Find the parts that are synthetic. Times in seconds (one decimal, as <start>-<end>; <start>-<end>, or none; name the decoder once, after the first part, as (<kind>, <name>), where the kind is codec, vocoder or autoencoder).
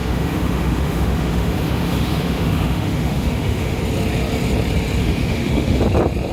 0.0-3.8 (autoencoder, DAC-VAE); 5.0-5.8